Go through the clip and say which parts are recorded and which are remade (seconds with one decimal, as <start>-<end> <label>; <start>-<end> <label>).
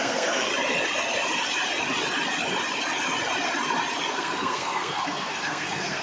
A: 0.0-0.5 remade; 0.5-4.1 recorded; 4.1-6.0 remade